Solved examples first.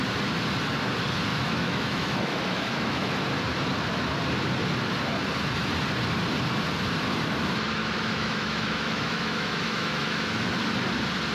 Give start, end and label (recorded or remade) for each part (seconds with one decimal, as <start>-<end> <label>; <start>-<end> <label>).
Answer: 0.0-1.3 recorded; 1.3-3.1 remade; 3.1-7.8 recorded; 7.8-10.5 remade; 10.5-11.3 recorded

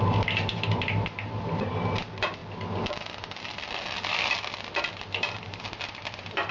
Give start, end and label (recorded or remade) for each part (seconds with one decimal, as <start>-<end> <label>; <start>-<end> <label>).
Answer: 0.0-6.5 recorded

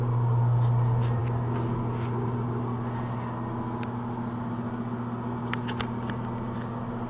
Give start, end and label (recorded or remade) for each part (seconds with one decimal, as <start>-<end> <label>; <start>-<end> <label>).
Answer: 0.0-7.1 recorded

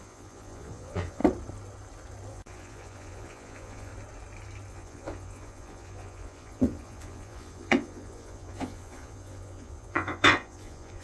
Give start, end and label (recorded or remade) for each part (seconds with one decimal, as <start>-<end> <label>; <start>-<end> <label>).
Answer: 0.0-1.2 remade; 1.2-2.3 recorded; 2.3-3.9 remade; 3.9-4.7 recorded; 4.7-11.0 remade

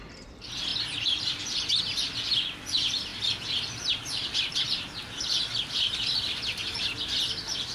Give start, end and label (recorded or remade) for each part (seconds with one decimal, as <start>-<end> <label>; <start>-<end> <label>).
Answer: 0.0-7.7 remade

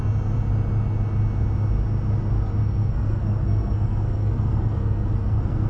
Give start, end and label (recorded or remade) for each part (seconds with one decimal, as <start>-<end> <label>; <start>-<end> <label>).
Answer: 0.0-2.6 recorded; 2.6-5.7 remade